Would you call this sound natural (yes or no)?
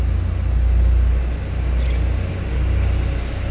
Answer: yes